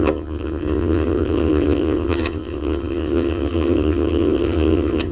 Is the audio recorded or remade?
remade